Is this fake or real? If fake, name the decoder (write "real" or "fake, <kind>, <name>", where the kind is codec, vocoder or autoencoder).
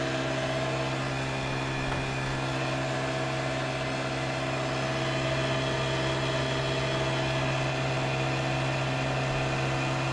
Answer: real